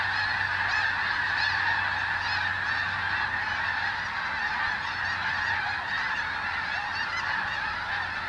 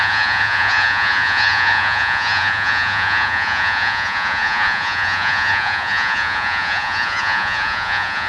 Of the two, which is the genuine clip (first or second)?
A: first